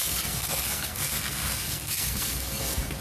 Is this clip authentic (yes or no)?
no